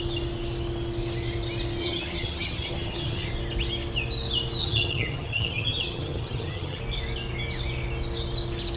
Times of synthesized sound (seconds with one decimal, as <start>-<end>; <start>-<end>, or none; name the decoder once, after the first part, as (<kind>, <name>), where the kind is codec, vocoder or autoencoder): 1.8-3.3 (vocoder, HiFi-GAN); 4.6-6.8